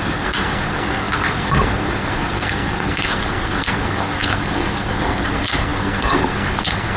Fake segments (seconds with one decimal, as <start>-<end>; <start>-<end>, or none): 0.0-7.0

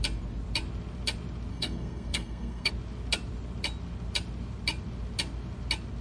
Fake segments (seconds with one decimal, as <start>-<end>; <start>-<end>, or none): 1.5-2.7

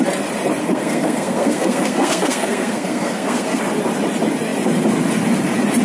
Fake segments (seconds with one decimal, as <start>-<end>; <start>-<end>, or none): 0.6-3.6

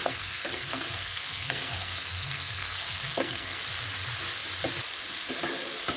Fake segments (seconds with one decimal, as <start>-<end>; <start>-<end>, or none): 0.0-3.6

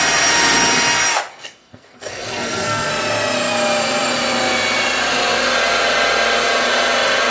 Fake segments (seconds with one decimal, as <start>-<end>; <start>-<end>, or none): 1.3-2.9